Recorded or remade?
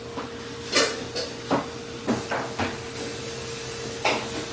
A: recorded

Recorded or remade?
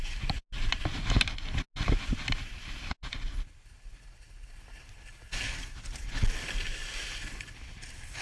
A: recorded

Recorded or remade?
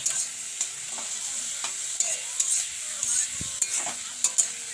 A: recorded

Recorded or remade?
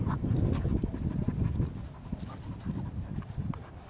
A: recorded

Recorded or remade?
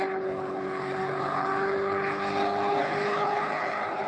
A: remade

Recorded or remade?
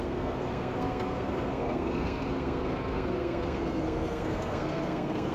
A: remade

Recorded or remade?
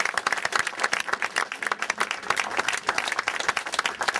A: recorded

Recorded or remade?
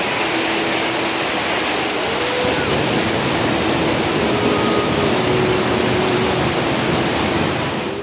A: recorded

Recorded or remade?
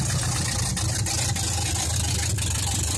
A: recorded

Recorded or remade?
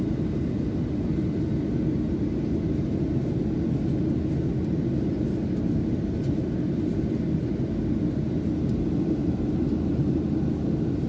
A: recorded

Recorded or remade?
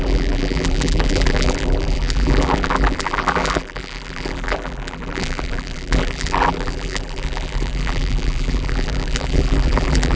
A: remade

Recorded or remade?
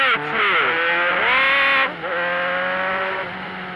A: recorded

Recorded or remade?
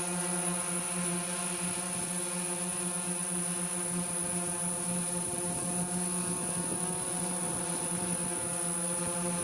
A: recorded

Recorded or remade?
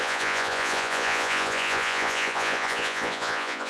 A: remade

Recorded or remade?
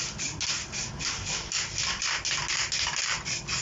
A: recorded